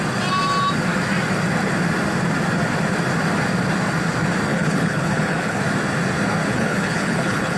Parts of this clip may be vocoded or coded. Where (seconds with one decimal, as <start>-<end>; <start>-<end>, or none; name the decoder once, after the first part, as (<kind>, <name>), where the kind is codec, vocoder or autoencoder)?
4.5-5.6 (codec, HILCodec); 6.5-7.6